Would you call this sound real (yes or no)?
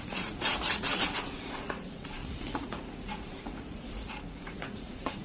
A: no